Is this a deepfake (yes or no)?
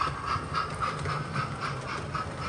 no